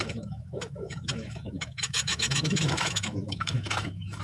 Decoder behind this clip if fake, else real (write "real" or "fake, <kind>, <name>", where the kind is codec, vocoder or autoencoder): fake, autoencoder, DAC-VAE